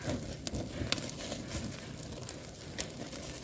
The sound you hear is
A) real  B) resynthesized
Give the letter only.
A